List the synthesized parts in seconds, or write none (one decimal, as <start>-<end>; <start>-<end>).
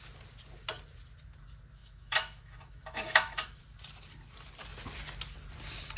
1.8-3.6